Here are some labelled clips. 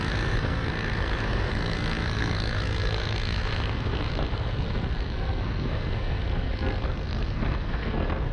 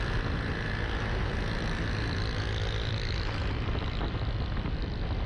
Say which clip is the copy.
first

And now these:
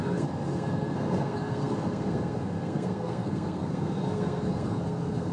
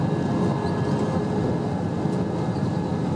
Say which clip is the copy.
first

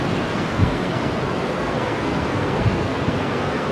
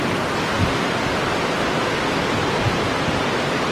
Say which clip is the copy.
first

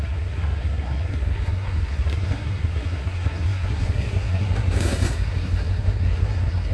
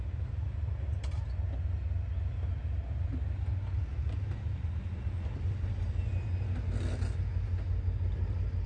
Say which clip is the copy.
first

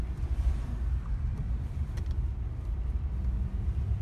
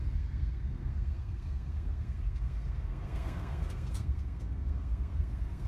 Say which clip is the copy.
second